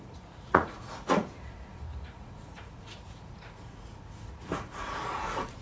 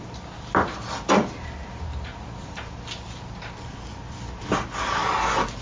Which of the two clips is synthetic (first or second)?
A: first